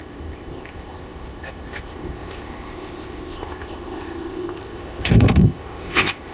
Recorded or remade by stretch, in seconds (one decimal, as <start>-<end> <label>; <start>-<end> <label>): 0.0-6.3 remade